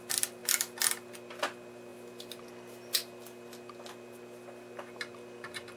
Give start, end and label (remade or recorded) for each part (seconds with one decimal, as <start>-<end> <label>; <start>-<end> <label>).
0.0-5.8 recorded